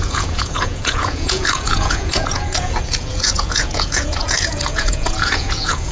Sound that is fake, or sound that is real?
fake